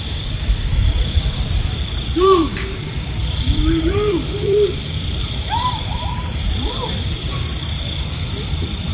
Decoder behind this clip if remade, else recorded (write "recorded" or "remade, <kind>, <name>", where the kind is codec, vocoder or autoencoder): remade, vocoder, BigVGAN v2